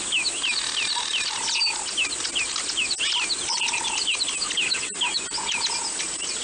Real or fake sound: real